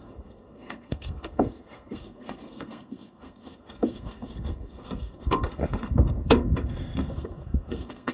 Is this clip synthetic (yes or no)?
yes